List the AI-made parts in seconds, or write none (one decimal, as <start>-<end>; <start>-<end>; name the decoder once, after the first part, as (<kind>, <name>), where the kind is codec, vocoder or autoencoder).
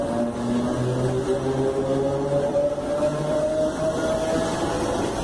2.5-4.0 (vocoder, BigVGAN v2)